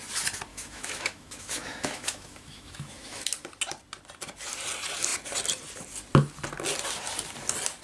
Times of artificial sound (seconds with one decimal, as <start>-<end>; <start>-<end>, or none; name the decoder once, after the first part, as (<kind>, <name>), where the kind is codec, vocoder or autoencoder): 0.5-3.2 (autoencoder, DAC-VAE)